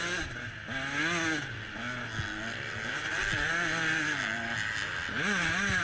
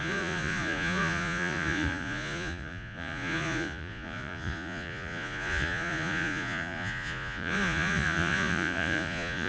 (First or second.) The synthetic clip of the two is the second